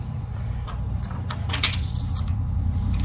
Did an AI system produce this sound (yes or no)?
yes